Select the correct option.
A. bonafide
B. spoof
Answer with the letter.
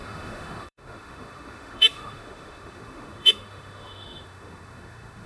B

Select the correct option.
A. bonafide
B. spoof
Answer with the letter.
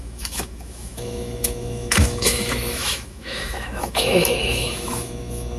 B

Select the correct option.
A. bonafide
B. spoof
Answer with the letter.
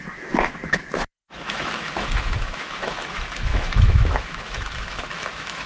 B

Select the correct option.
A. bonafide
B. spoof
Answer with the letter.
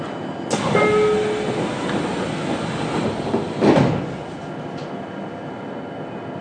A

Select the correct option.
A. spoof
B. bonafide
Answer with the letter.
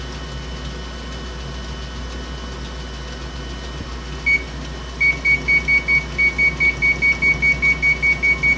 B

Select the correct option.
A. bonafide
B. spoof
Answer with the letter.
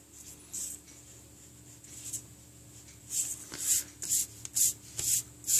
A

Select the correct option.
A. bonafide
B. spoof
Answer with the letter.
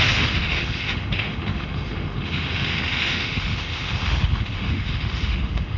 B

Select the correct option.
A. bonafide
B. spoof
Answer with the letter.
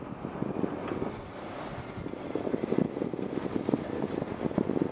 A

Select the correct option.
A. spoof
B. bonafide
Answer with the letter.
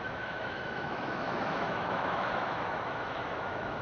A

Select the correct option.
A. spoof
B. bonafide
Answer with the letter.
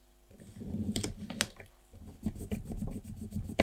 B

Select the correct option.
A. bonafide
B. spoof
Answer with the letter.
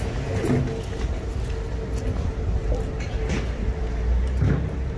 A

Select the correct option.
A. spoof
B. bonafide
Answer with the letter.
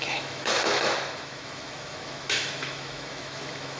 A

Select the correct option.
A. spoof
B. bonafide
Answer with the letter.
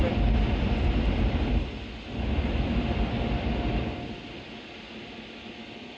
B